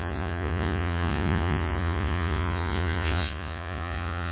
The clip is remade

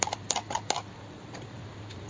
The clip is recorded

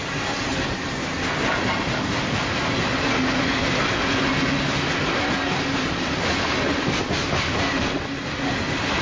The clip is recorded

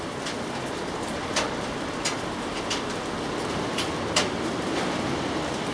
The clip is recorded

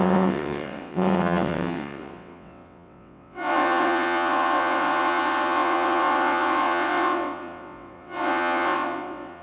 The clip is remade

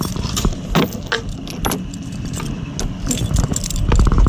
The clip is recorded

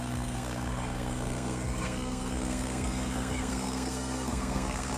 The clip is remade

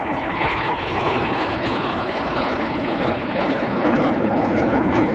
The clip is remade